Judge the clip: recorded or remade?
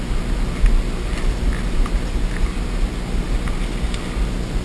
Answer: recorded